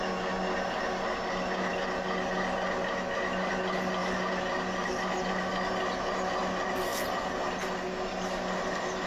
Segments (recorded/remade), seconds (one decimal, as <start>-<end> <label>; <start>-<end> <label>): 0.0-9.1 recorded